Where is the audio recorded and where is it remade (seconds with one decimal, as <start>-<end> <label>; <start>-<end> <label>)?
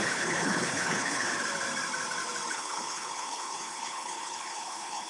0.0-1.3 remade; 1.3-2.5 recorded; 2.5-5.1 remade